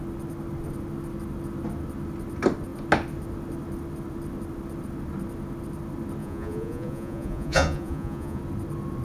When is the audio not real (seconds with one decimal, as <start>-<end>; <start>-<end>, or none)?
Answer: 6.2-8.4